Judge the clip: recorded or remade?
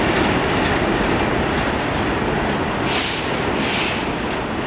recorded